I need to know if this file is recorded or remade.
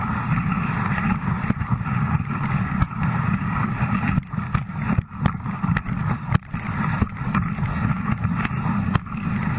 recorded